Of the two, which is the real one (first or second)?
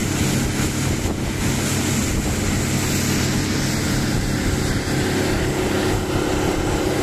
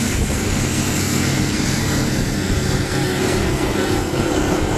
first